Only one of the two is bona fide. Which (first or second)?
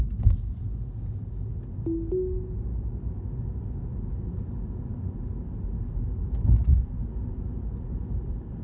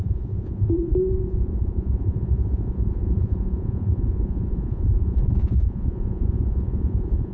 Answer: first